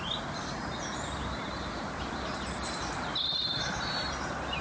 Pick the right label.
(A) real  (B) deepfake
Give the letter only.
A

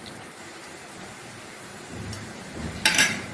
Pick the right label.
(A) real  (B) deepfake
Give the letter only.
B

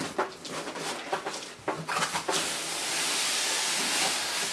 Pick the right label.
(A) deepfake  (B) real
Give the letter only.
B